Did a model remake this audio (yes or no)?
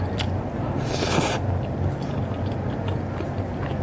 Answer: no